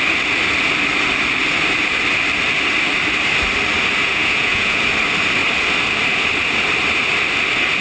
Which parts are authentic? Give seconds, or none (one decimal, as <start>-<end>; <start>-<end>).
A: 0.0-4.0; 4.8-7.8